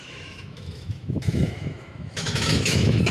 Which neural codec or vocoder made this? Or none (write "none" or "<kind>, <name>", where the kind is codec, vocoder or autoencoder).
autoencoder, DAC-VAE